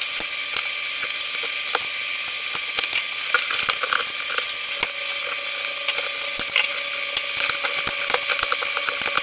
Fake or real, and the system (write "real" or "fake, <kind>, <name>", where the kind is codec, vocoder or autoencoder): real